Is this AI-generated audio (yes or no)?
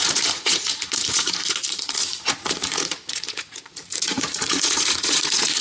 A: yes